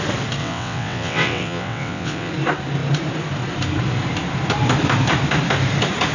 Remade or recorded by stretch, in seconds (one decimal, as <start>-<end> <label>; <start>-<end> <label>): 0.0-0.4 recorded; 0.4-2.3 remade; 2.3-6.1 recorded